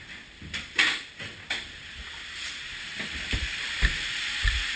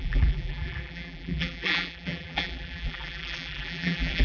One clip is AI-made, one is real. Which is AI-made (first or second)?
second